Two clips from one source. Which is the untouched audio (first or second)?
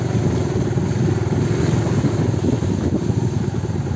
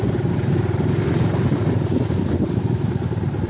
first